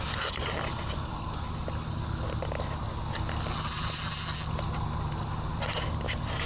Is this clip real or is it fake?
real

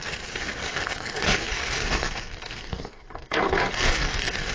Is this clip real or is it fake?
fake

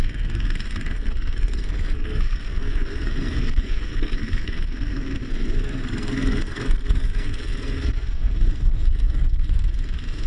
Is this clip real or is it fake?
fake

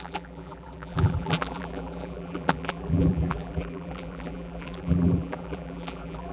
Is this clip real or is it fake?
fake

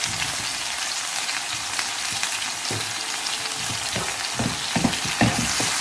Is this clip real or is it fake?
real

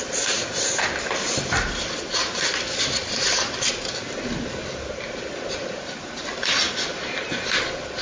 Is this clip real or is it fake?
real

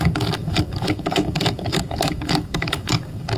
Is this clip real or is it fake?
fake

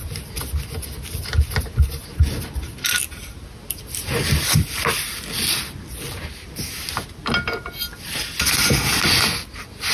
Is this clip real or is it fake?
real